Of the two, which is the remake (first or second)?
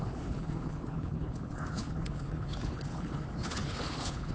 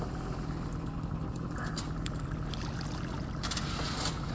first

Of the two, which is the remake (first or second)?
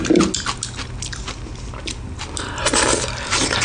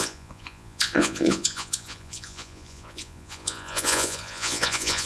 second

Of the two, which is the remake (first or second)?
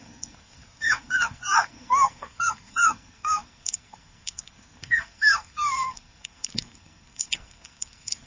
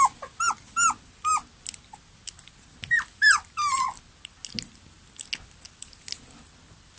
first